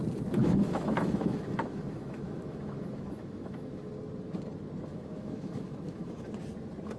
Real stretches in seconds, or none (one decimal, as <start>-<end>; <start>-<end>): 0.0-0.4; 3.9-4.9; 6.3-7.0